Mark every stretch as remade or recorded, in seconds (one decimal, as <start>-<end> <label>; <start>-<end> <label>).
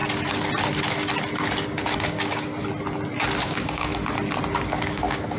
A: 0.0-1.8 recorded; 1.8-2.5 remade; 2.5-3.4 recorded; 3.4-3.9 remade; 3.9-4.7 recorded; 4.7-5.4 remade